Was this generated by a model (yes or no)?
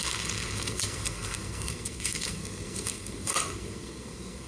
yes